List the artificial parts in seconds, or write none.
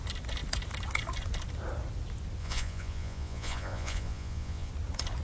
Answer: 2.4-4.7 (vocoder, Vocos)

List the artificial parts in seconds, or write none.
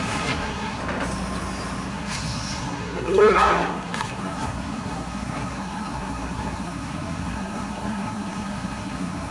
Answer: 0.0-0.8 (codec, SNAC); 1.9-9.3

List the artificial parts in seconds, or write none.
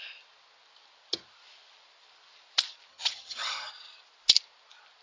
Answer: 2.9-3.7 (vocoder, HiFi-GAN)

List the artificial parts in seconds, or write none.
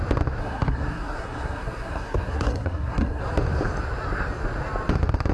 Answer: 0.4-3.2 (codec, SNAC)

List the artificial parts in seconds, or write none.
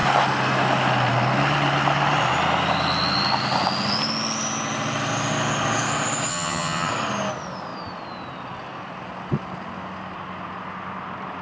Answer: 6.3-6.9 (vocoder, HiFi-GAN)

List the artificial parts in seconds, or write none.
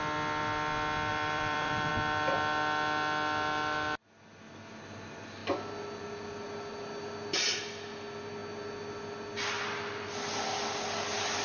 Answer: 1.1-1.9 (vocoder, BigVGAN v2)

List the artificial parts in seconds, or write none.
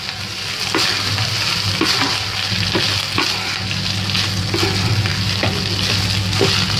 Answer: none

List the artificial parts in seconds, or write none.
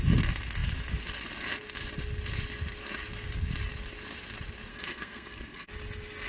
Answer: 4.7-5.7 (codec, SNAC)